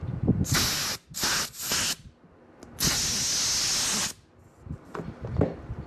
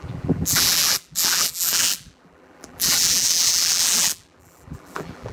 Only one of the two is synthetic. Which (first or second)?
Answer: second